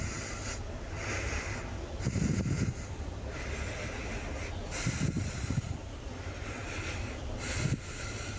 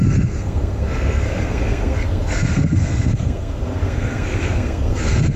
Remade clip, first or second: second